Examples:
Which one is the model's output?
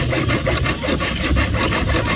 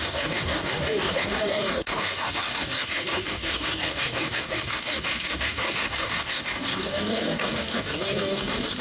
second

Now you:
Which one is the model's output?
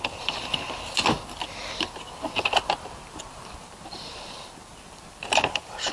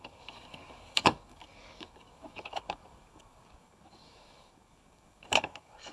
second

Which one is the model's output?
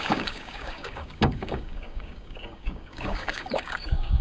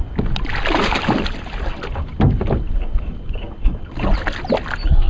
first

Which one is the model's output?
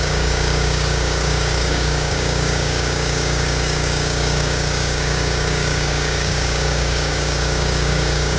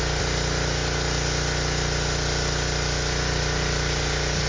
first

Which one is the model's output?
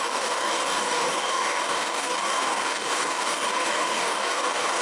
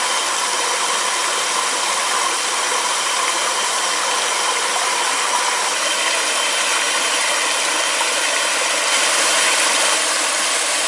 first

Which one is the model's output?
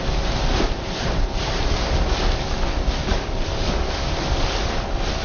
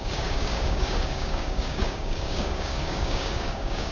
second